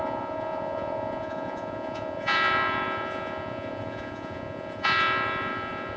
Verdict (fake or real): fake